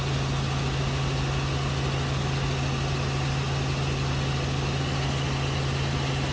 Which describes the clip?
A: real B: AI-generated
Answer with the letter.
A